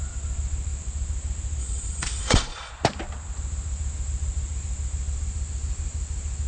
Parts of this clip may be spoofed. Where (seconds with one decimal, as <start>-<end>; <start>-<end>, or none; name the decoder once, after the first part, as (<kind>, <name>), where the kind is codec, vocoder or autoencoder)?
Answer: 1.6-2.7 (vocoder, Vocos)